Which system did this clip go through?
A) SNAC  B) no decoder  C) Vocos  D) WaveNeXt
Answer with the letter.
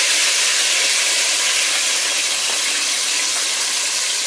B